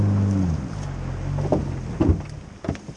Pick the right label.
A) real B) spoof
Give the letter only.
A